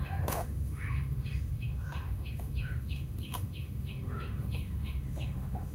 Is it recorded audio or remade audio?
remade